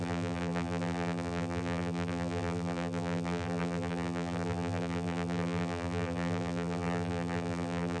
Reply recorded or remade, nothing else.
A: remade